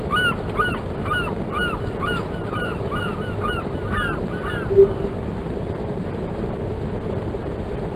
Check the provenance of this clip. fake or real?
real